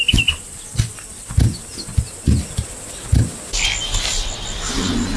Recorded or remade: recorded